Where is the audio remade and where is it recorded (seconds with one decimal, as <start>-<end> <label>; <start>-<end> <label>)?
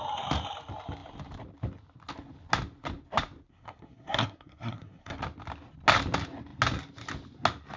0.0-3.5 recorded; 3.5-5.2 remade; 5.2-7.8 recorded